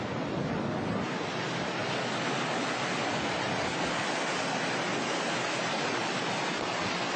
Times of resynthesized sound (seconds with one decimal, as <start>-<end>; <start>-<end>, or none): none